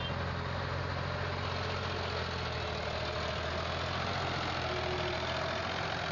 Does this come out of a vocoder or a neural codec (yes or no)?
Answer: no